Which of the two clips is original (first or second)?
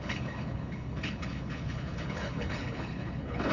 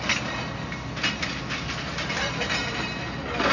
second